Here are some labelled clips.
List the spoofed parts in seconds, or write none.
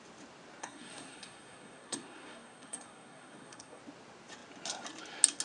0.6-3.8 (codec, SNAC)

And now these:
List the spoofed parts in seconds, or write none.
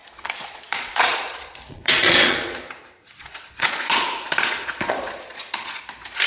0.0-2.6 (vocoder, Vocos); 3.0-5.8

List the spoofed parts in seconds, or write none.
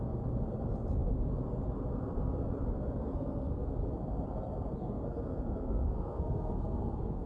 3.0-3.7 (codec, SNAC); 4.8-7.3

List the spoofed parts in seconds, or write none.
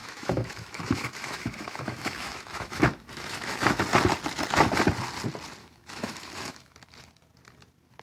0.0-3.8 (autoencoder, DAC-VAE); 5.6-6.9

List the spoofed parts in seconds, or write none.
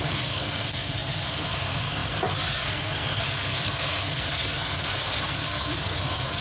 0.0-6.4 (codec, SNAC)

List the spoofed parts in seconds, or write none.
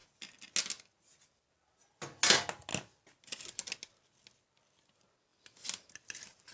none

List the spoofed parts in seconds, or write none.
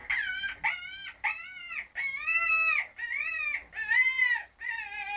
none